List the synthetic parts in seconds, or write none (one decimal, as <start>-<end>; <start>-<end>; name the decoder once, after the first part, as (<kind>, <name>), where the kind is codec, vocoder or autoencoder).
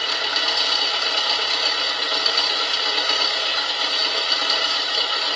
2.0-5.4 (autoencoder, DAC-VAE)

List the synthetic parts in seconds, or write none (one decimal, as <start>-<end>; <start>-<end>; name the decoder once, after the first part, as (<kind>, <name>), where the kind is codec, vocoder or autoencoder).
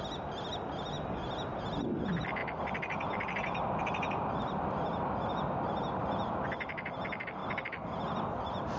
2.4-4.4 (vocoder, BigVGAN v2); 7.4-8.8